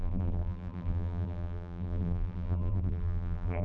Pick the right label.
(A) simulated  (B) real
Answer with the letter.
A